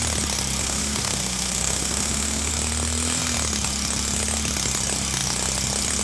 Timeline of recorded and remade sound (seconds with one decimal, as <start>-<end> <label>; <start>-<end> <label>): 0.0-0.6 recorded; 0.6-2.5 remade; 2.5-6.0 recorded